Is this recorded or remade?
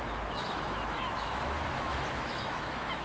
remade